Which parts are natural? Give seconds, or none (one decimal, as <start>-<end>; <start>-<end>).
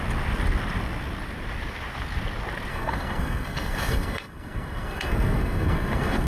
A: 0.0-2.7